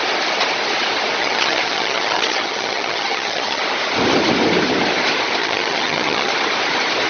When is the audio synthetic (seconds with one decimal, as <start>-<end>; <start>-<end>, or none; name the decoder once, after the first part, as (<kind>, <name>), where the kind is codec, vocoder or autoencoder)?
1.2-3.6 (vocoder, HiFi-GAN); 5.4-6.3